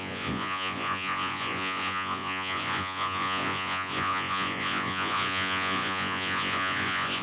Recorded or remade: remade